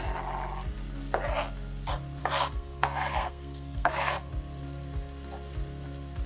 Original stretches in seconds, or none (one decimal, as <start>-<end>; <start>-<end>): 0.0-2.2; 4.3-6.3